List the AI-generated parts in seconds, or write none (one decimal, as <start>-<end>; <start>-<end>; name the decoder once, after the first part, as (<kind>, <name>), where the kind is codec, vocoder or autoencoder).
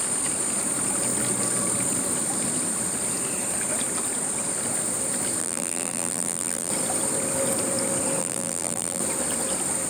5.4-6.7 (vocoder, BigVGAN v2); 8.2-9.0